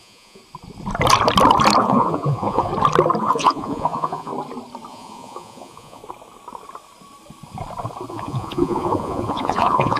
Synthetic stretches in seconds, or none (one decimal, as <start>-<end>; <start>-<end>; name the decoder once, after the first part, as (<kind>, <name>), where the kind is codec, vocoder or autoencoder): 0.0-0.4 (vocoder, Vocos); 1.8-2.7; 3.2-4.3; 4.9-6.0; 8.1-10.0